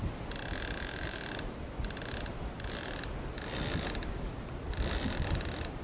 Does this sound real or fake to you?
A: real